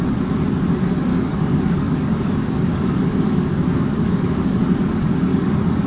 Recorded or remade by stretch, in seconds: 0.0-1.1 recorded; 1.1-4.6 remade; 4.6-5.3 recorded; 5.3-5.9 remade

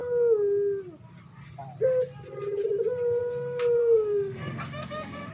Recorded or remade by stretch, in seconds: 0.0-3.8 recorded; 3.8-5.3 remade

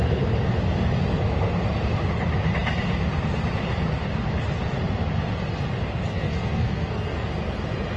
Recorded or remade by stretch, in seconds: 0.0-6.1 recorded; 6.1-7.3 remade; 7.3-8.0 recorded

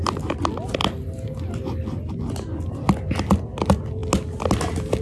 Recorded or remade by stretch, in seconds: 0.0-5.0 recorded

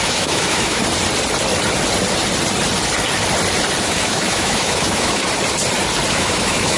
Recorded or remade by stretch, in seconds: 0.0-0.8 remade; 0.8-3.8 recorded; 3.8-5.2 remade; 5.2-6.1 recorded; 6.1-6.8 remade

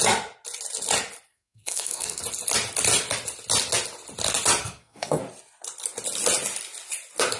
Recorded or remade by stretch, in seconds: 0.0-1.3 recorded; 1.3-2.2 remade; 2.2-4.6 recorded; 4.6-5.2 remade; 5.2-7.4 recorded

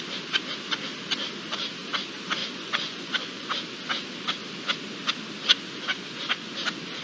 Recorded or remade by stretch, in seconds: 0.0-2.4 recorded; 2.4-3.5 remade; 3.5-5.9 recorded; 5.9-6.5 remade; 6.5-7.0 recorded

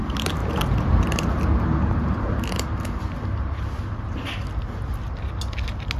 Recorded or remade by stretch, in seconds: 0.0-6.0 recorded